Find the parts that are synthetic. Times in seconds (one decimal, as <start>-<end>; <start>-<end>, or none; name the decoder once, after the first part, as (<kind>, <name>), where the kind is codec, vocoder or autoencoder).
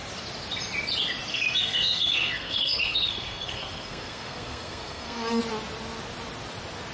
1.3-5.4 (codec, SNAC)